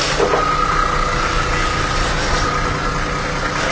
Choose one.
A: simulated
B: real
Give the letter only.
B